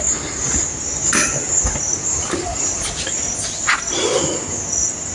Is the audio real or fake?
real